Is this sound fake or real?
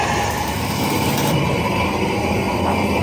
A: real